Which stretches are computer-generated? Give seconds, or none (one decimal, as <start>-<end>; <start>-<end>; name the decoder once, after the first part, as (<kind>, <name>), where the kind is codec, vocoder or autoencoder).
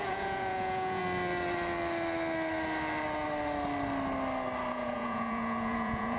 0.0-1.0 (vocoder, Vocos); 4.7-6.2